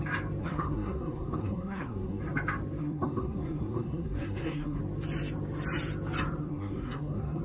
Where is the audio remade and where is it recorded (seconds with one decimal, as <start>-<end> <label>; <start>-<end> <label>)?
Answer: 0.0-0.4 recorded; 0.4-2.2 remade; 2.2-2.8 recorded; 2.8-4.8 remade; 4.8-6.4 recorded; 6.4-7.4 remade

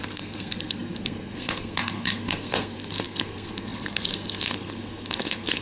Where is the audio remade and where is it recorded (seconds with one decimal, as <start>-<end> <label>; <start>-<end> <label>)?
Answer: 0.0-5.6 remade

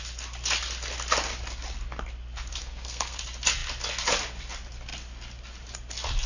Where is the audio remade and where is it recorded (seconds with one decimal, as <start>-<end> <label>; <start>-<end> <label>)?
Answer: 0.0-2.6 recorded; 2.6-3.2 remade; 3.2-6.3 recorded

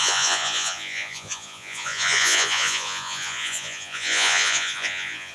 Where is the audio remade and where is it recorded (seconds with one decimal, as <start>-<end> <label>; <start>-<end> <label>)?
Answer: 0.0-5.3 remade

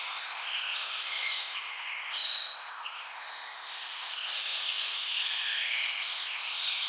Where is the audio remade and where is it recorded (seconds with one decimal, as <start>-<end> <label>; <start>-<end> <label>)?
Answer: 0.0-6.9 remade